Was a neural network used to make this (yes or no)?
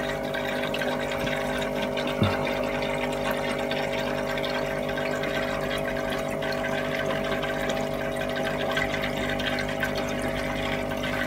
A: no